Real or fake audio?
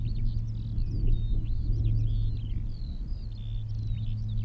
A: real